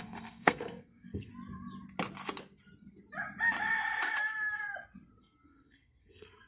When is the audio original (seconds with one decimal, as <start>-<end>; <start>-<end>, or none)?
1.3-5.2